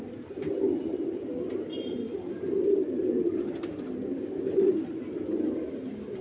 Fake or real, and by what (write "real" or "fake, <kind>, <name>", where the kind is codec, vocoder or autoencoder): real